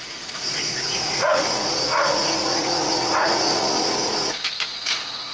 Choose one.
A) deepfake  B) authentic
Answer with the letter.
A